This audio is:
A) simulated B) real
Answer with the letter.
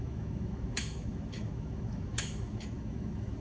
A